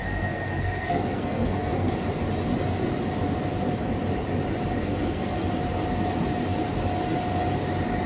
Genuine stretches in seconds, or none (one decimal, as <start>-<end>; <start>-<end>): 1.9-4.8; 5.5-8.1